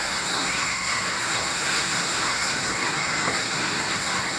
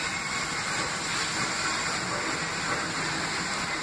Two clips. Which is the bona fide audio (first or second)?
second